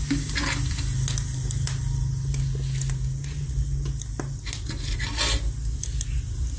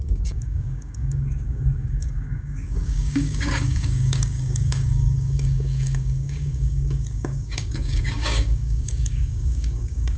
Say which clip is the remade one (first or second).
second